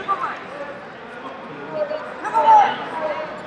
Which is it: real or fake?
real